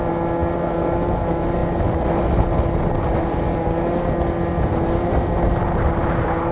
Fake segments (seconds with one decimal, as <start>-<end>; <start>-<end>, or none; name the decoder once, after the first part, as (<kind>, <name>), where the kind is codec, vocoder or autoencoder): none